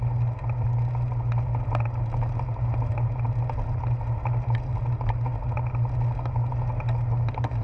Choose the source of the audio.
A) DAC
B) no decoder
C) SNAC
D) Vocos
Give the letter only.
B